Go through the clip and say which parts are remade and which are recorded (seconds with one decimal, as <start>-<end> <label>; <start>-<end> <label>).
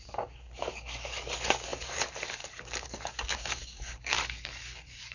0.0-5.1 remade